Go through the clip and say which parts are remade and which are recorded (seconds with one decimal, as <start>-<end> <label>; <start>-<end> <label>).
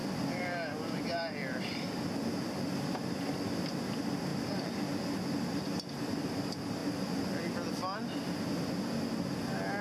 0.0-2.0 remade; 2.0-9.8 recorded